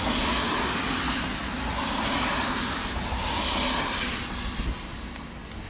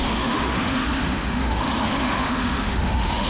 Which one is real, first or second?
first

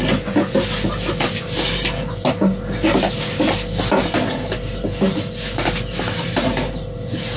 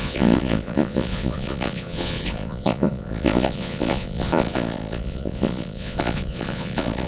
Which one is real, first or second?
first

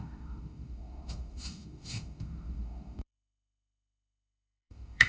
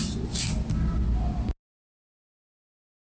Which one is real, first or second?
second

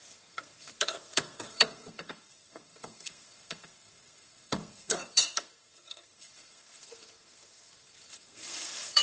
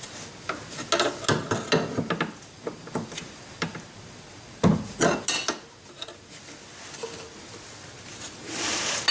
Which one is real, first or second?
second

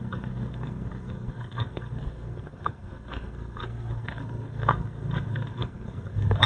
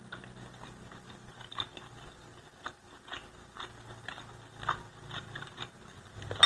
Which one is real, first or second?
second